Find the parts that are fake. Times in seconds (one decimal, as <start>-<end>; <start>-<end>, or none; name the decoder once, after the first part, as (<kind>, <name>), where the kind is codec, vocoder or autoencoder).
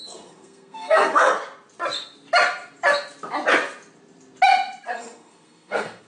0.0-1.3 (codec, SNAC); 4.9-6.1